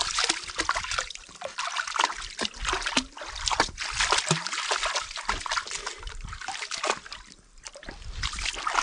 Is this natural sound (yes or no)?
yes